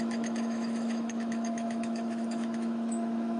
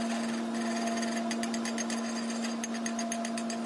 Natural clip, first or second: second